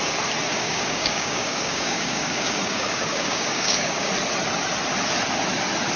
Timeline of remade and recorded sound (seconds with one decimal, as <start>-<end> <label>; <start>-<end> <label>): 0.0-0.5 recorded; 0.5-4.1 remade; 4.1-6.0 recorded